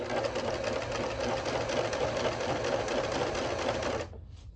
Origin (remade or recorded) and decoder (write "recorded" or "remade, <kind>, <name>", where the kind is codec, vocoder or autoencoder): recorded